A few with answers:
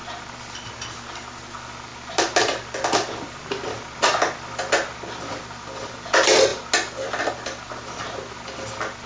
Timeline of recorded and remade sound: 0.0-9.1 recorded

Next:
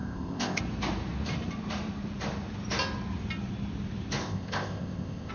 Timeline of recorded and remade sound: 0.0-0.6 remade; 0.6-4.2 recorded; 4.2-5.3 remade

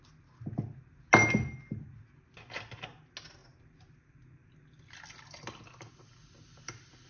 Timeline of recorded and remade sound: 0.0-7.1 recorded

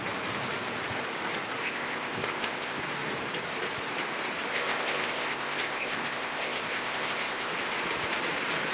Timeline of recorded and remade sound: 0.0-1.6 recorded; 1.6-2.8 remade; 2.8-4.5 recorded; 4.5-7.5 remade; 7.5-8.7 recorded